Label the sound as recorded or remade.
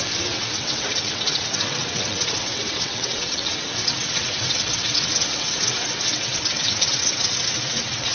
remade